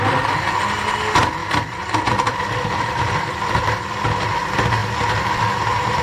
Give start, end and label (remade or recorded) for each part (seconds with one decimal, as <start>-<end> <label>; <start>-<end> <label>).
0.0-1.4 recorded; 1.4-3.6 remade; 3.6-6.0 recorded

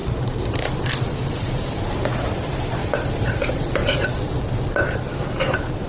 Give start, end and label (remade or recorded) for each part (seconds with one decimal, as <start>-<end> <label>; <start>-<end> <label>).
0.0-3.8 remade; 3.8-5.1 recorded; 5.1-5.9 remade

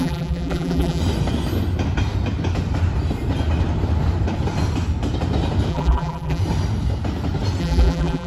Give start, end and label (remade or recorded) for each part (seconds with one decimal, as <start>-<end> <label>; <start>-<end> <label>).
0.0-1.0 remade; 1.0-5.7 recorded; 5.7-6.4 remade; 6.4-7.6 recorded; 7.6-8.3 remade

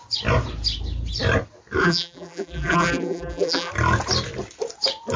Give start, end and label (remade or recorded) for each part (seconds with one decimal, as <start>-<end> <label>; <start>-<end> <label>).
0.0-1.8 recorded; 1.8-3.7 remade; 3.7-5.2 recorded

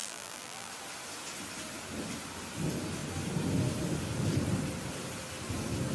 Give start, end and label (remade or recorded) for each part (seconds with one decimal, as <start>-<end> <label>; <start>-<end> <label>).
0.0-0.7 remade; 0.7-5.9 recorded

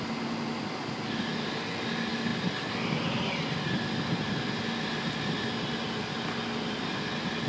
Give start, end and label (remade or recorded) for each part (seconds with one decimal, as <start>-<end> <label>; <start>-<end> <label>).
0.0-7.5 recorded

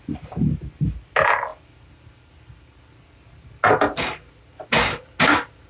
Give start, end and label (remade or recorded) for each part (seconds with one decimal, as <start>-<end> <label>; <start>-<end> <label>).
0.0-5.7 recorded